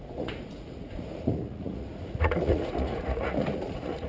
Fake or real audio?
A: fake